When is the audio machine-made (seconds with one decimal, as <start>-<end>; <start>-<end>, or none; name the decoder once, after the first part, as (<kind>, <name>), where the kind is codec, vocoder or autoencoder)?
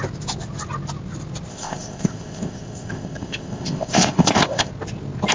1.5-4.7 (codec, ZipCodec)